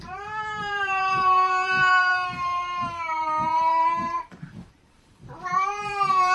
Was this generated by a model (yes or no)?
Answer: yes